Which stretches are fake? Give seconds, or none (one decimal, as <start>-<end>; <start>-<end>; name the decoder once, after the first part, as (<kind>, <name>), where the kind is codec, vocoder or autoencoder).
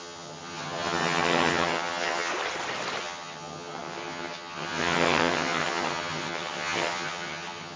0.0-2.3 (vocoder, HiFi-GAN); 3.0-7.8